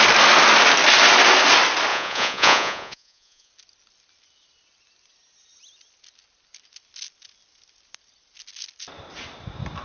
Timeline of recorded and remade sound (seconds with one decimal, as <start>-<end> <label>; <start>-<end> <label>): 0.0-1.9 recorded; 1.9-3.5 remade; 3.5-9.8 recorded